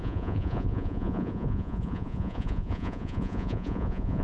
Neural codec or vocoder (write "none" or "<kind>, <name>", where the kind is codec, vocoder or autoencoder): vocoder, Vocos